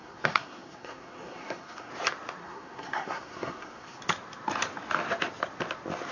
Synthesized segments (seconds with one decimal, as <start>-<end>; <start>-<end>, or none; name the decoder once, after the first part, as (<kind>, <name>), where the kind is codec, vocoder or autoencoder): 0.0-1.9 (codec, SNAC); 2.4-4.0